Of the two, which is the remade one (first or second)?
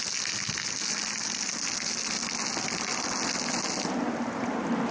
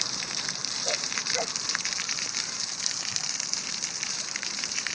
second